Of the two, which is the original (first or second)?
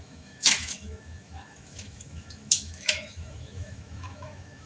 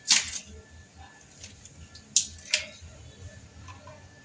second